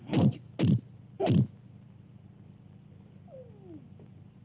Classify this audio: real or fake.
real